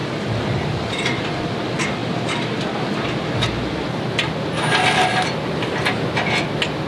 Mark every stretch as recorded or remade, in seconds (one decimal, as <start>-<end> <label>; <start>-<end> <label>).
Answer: 0.0-1.4 remade; 1.4-6.9 recorded